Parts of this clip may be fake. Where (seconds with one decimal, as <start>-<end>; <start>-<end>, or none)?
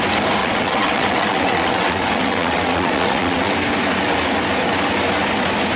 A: 0.4-3.5